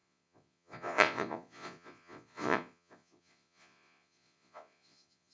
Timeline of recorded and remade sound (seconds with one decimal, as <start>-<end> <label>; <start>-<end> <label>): 0.0-5.3 remade